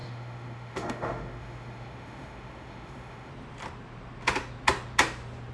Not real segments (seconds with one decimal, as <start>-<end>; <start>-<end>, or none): 0.0-3.3